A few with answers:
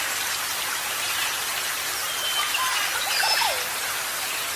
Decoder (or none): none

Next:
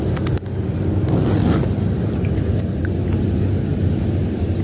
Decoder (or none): none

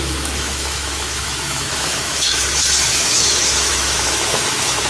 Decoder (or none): autoencoder, DAC-VAE